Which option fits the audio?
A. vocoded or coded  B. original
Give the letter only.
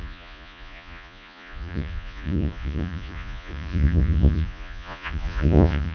A